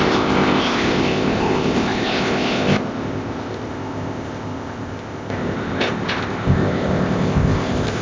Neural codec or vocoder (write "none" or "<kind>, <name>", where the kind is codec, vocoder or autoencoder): codec, ZipCodec